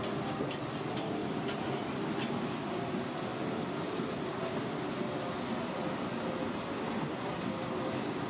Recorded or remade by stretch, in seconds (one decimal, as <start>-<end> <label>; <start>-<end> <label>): 0.0-1.2 recorded; 1.2-1.9 remade; 1.9-8.3 recorded

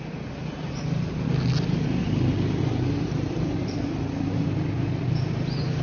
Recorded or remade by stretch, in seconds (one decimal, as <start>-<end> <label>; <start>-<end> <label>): 0.0-0.5 recorded; 0.5-1.3 remade; 1.3-2.0 recorded; 2.0-4.4 remade; 4.4-5.8 recorded